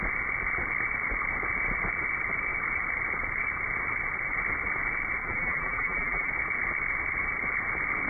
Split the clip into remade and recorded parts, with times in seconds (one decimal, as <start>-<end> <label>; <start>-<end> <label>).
0.0-5.2 recorded; 5.2-6.3 remade; 6.3-8.1 recorded